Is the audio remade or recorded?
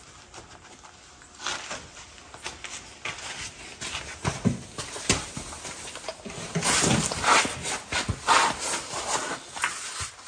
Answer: recorded